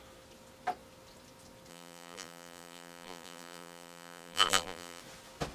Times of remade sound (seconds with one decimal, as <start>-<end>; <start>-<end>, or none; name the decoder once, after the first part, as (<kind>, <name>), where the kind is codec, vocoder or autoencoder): 1.7-5.0 (vocoder, BigVGAN v2)